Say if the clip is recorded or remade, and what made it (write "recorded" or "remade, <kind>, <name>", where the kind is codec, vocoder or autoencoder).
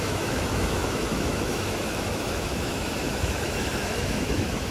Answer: remade, autoencoder, DAC-VAE